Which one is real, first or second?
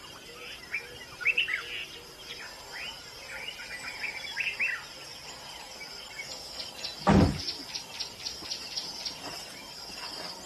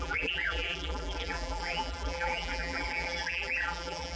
first